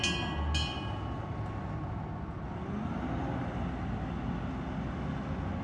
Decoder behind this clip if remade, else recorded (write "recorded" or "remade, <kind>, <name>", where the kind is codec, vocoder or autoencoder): recorded